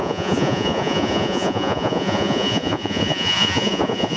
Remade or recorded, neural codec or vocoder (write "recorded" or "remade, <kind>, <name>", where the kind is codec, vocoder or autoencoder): remade, vocoder, Vocos